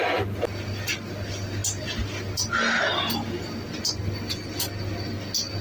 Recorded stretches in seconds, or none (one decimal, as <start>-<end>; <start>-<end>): 0.0-5.6